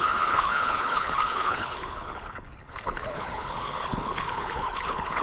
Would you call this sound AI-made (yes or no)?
yes